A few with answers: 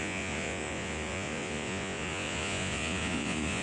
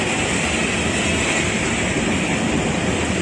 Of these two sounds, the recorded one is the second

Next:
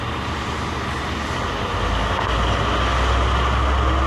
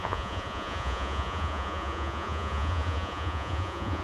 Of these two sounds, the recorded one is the first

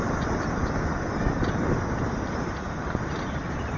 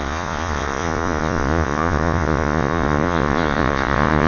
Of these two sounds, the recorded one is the first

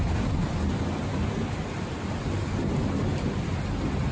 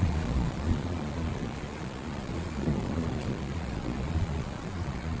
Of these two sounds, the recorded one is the first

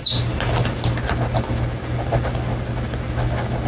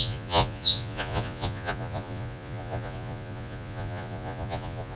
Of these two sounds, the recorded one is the first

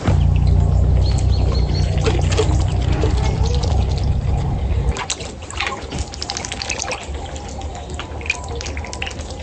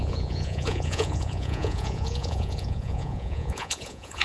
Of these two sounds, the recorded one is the first